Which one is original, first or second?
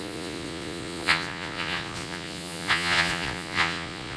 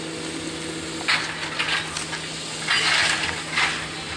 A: second